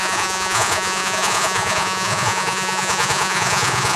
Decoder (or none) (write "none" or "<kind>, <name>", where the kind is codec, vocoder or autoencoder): vocoder, Vocos